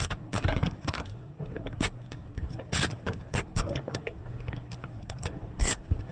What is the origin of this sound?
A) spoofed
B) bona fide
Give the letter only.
A